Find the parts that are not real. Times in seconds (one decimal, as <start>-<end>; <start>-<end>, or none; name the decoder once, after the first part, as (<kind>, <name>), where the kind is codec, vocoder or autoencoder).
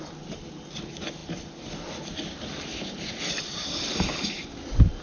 none